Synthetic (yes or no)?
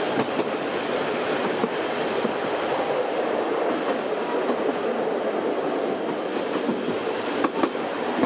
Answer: no